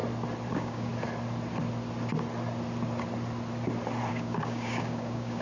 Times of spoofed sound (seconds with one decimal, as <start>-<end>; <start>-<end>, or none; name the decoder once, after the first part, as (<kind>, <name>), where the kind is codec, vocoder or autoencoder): 0.5-0.9 (codec, DAC); 4.1-5.4